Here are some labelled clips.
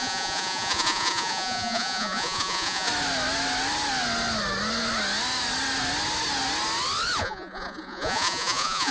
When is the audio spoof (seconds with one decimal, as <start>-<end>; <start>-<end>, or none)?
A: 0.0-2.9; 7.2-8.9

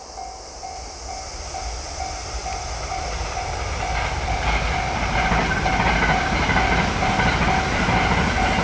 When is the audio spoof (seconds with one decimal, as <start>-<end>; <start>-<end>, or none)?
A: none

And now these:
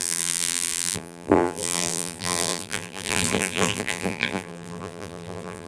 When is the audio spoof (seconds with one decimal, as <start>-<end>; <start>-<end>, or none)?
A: 0.0-5.7

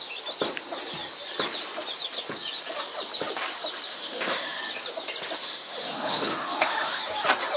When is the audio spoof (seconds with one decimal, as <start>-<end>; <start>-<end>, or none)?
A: 3.9-4.6; 5.4-7.0

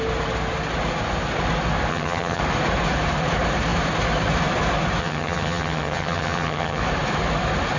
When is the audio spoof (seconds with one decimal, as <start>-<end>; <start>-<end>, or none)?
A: 1.9-2.4; 5.0-6.8

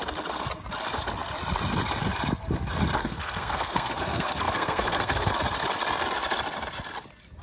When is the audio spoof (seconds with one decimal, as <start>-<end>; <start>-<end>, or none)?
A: 3.0-5.3

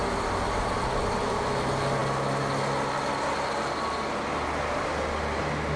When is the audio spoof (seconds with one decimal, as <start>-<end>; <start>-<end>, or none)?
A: none

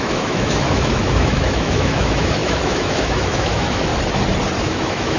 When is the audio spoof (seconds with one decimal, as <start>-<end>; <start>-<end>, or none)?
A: 0.0-3.9; 4.6-5.2